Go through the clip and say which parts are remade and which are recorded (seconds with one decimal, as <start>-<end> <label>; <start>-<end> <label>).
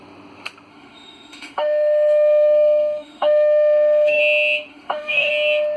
0.0-0.7 recorded; 0.7-4.2 remade; 4.2-4.7 recorded; 4.7-5.3 remade; 5.3-5.8 recorded